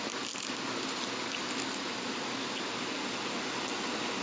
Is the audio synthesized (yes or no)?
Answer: no